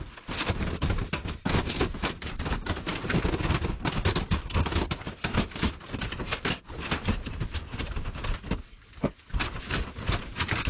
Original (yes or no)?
yes